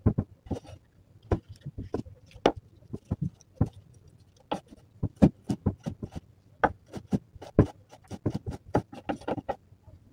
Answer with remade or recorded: recorded